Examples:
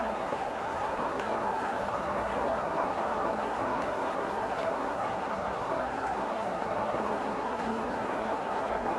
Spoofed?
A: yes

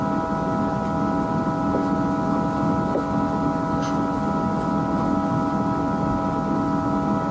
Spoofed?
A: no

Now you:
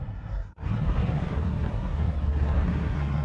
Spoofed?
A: yes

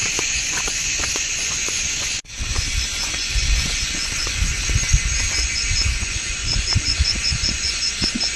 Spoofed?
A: yes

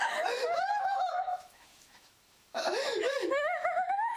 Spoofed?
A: yes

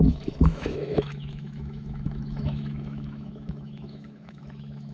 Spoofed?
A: yes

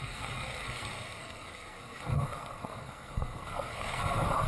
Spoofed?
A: yes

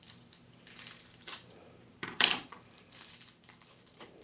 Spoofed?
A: yes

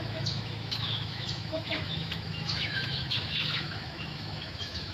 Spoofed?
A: yes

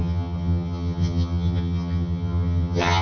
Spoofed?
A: yes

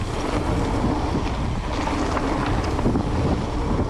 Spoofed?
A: no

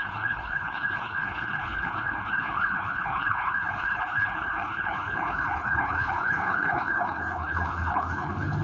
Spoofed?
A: yes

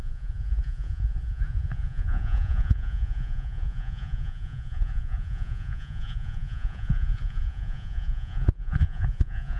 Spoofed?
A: yes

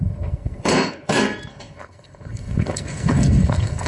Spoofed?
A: yes